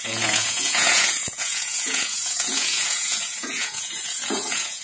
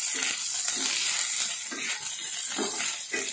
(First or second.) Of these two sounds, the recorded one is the second